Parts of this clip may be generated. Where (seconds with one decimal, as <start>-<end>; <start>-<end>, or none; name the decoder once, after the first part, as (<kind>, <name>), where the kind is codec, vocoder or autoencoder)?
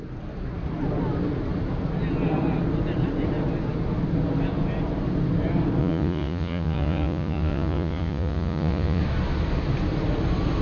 5.8-9.0 (vocoder, Vocos)